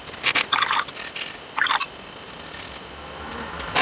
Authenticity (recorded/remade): recorded